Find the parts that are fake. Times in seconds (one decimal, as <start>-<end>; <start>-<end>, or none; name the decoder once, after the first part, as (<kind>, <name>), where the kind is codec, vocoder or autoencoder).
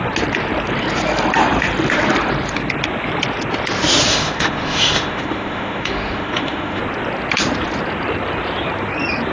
4.1-6.8 (autoencoder, DAC-VAE)